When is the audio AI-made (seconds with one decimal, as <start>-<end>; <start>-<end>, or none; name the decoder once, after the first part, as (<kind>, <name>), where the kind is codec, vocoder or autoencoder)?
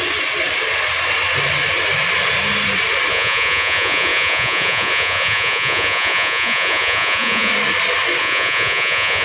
3.1-7.5 (vocoder, Vocos); 8.2-9.2